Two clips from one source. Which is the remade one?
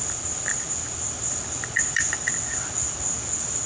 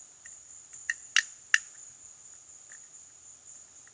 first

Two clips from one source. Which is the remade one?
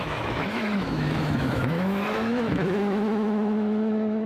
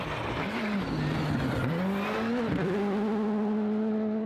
first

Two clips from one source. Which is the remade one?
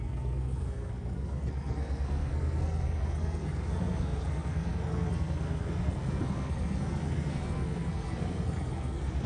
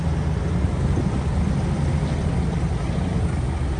first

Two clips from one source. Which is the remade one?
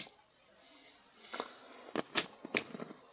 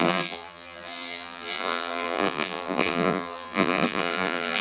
second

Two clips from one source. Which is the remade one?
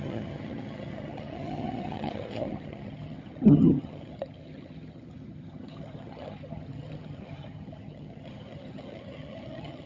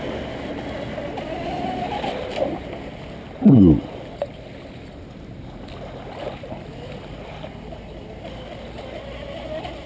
first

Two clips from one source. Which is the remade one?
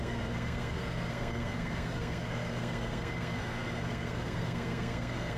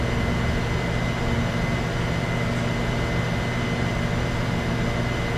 first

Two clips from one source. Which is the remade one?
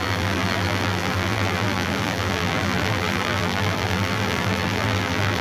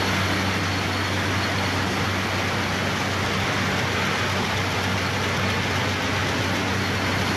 first